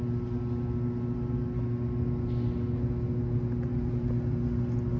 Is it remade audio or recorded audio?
recorded